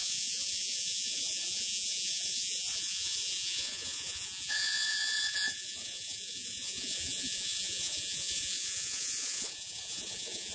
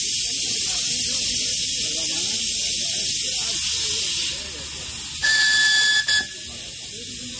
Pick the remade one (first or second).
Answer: first